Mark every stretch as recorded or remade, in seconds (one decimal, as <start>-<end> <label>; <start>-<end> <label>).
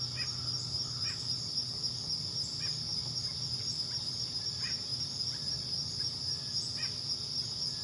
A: 0.0-7.8 recorded